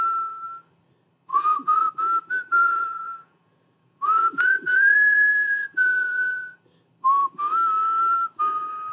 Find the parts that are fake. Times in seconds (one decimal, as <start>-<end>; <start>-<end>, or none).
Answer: 1.3-1.9; 2.5-6.6